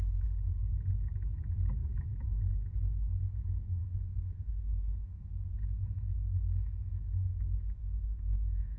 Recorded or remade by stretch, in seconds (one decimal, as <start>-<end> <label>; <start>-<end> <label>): 0.0-3.8 recorded; 3.8-8.8 remade